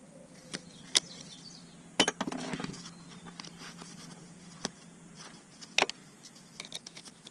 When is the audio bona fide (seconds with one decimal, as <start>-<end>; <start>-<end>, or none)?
0.0-7.3